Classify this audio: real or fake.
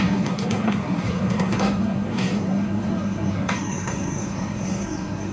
fake